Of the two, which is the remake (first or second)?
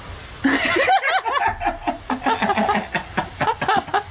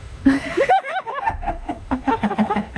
second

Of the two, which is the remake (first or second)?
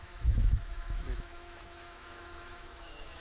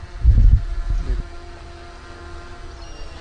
first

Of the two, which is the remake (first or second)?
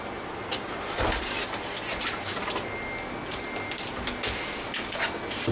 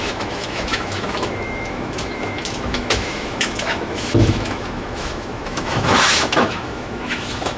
second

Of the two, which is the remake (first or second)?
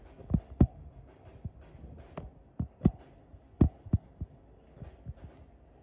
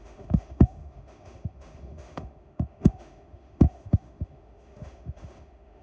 second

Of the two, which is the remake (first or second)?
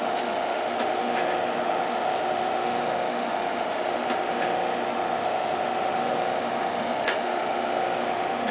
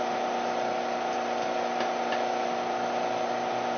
first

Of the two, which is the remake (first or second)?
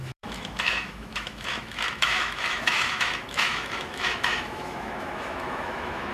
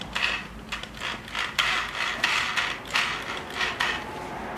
first